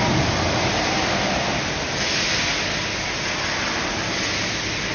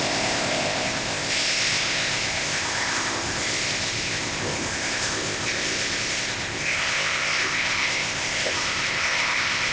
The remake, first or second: second